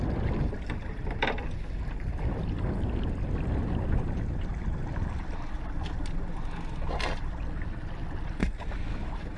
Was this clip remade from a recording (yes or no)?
no